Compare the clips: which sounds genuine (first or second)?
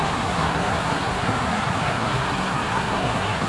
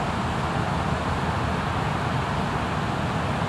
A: second